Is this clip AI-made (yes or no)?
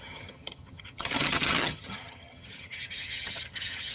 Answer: yes